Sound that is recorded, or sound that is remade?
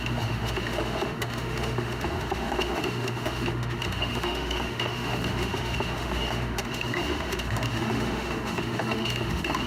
remade